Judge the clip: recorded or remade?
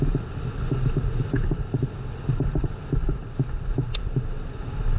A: recorded